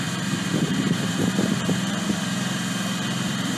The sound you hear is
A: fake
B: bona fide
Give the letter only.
A